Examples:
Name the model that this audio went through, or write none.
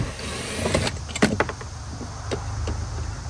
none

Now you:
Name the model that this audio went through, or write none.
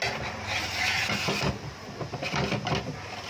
none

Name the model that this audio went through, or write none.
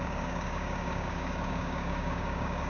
codec, DAC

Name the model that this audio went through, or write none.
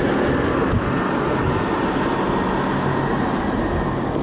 none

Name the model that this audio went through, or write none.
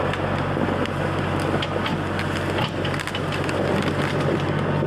none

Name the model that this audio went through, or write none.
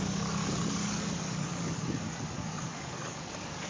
codec, DAC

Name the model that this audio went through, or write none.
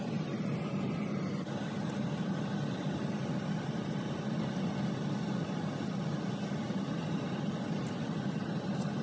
none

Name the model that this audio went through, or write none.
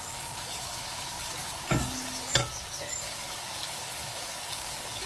codec, DAC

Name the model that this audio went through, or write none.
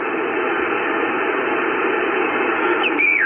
none